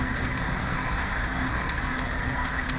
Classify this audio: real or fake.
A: fake